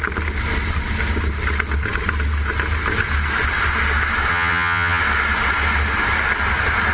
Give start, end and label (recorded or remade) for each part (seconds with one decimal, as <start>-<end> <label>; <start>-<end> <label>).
0.0-4.3 recorded; 4.3-5.0 remade; 5.0-6.9 recorded